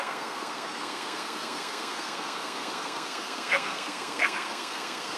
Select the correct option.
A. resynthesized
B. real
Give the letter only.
A